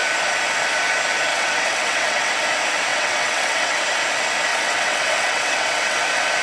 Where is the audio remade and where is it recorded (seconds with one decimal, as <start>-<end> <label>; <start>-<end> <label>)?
0.0-1.3 recorded; 1.3-2.3 remade; 2.3-2.9 recorded; 2.9-3.8 remade; 3.8-4.5 recorded; 4.5-6.0 remade; 6.0-6.4 recorded